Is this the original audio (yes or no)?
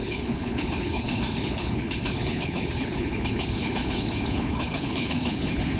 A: no